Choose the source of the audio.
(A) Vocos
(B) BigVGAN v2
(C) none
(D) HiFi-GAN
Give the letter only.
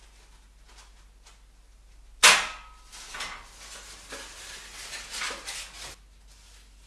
C